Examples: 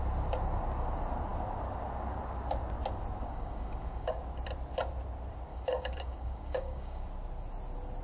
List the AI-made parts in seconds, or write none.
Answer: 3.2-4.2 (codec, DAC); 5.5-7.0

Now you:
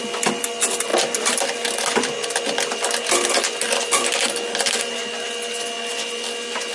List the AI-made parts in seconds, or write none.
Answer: none